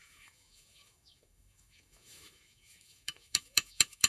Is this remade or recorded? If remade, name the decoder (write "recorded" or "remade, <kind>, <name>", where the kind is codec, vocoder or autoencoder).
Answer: remade, autoencoder, DAC-VAE